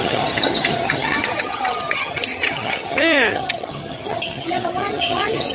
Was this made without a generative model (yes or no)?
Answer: no